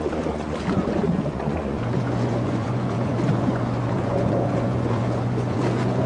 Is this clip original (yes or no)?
no